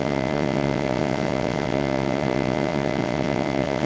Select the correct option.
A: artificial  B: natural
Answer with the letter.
A